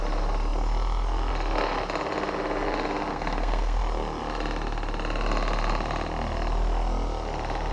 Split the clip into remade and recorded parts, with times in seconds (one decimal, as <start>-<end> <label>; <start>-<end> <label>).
0.0-3.1 recorded; 3.1-3.8 remade; 3.8-7.7 recorded